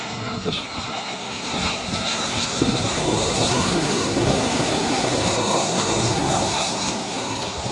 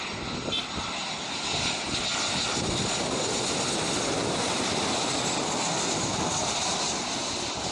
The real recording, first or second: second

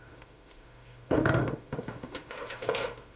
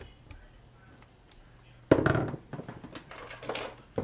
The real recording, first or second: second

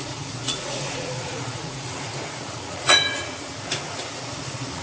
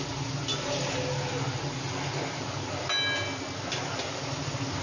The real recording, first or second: second